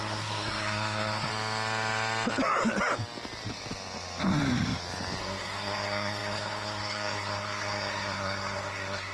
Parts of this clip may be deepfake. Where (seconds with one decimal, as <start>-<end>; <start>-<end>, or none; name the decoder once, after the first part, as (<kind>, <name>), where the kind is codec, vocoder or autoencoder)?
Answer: 0.0-1.3 (codec, SNAC); 5.2-9.1

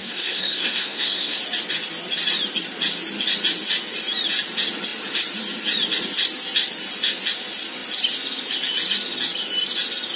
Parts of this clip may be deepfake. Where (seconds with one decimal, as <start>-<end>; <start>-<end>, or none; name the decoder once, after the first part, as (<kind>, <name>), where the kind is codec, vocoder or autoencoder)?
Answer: 0.0-1.4 (codec, SNAC)

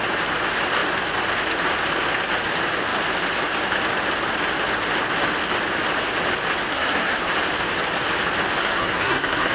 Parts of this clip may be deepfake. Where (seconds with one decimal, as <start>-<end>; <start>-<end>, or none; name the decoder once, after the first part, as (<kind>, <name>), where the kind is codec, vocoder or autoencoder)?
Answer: 6.7-7.3 (codec, SNAC); 8.6-9.5

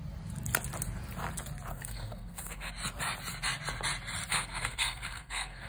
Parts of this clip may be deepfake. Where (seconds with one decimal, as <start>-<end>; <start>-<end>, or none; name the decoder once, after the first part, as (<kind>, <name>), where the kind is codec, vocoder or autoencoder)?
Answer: 1.7-2.7 (codec, SNAC); 4.3-5.7

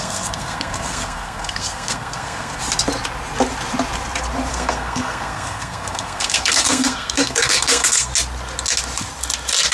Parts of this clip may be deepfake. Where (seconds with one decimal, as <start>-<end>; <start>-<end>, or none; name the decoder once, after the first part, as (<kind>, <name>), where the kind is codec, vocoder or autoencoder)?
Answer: 0.0-2.6 (codec, SNAC); 4.5-8.1